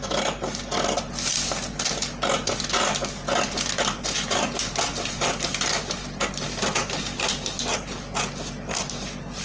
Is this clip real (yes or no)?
yes